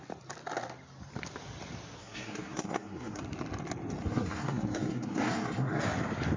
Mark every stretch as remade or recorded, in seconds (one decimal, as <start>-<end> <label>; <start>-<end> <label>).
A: 0.0-2.0 recorded; 2.0-3.2 remade; 3.2-4.0 recorded; 4.0-5.8 remade; 5.8-6.4 recorded